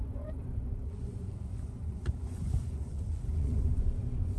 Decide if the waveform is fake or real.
fake